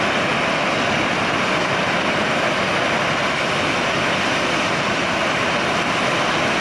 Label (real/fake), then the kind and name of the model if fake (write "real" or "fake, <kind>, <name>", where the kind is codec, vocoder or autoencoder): real